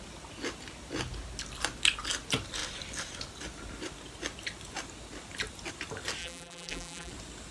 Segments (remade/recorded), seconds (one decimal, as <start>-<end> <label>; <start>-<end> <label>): 0.0-6.2 recorded; 6.2-7.1 remade; 7.1-7.5 recorded